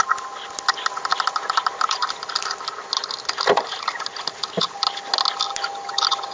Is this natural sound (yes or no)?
yes